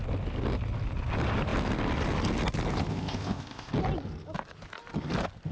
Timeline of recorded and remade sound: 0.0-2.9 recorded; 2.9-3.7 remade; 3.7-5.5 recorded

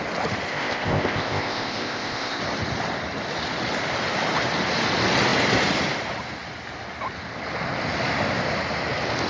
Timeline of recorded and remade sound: 0.0-0.5 recorded; 0.5-2.4 remade; 2.4-9.3 recorded